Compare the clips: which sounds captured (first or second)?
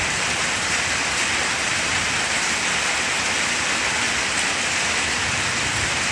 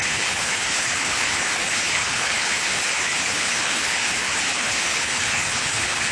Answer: first